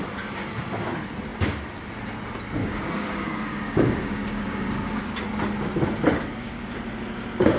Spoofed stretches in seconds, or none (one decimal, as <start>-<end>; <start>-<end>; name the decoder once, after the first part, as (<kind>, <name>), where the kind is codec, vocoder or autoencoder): 2.6-4.7 (codec, DAC); 6.1-6.7